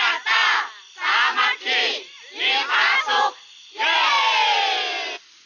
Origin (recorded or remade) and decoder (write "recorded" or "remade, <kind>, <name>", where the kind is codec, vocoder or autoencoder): remade, vocoder, BigVGAN v2